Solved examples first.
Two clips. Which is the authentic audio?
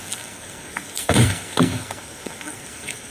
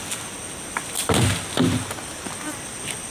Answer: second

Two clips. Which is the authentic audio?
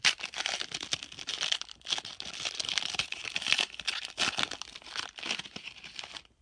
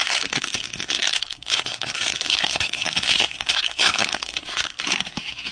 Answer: first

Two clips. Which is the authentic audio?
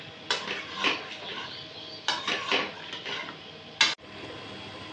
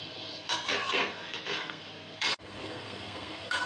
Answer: first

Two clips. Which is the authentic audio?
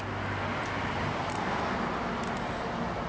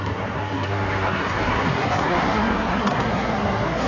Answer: first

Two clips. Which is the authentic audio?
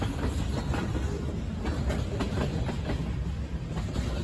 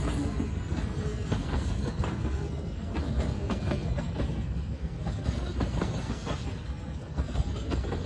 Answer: first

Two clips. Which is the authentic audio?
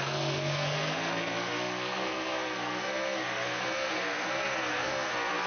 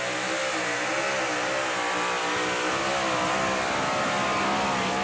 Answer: second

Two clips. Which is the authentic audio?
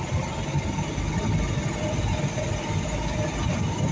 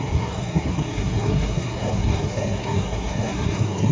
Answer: first